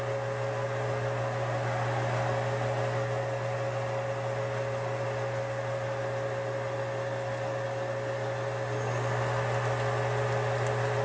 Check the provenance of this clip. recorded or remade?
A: recorded